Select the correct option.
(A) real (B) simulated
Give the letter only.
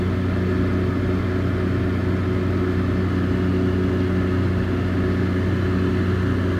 A